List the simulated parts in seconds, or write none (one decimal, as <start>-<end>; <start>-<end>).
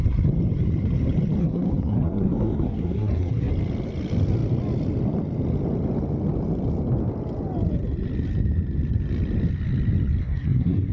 1.4-3.5; 10.2-10.9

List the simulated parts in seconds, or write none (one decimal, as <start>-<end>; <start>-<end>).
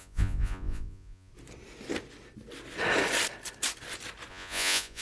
0.0-1.3; 4.3-5.0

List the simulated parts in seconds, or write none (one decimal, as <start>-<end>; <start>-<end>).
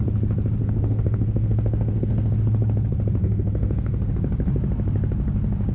0.6-2.3; 3.2-4.1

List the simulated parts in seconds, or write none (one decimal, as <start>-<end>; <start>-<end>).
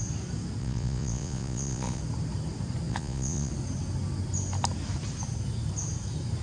0.6-2.0; 2.9-3.5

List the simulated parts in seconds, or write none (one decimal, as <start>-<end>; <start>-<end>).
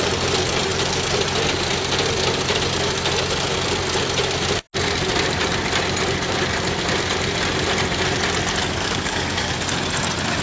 8.6-9.5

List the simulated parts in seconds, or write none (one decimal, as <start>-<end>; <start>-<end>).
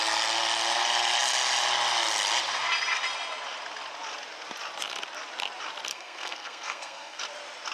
5.9-7.2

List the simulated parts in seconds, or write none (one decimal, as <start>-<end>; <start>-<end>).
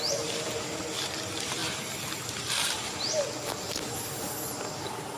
none